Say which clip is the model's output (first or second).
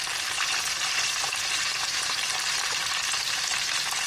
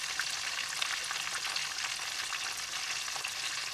first